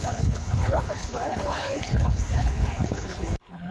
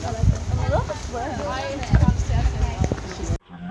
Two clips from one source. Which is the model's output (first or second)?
first